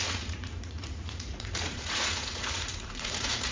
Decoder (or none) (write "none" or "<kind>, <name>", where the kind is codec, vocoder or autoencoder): vocoder, Vocos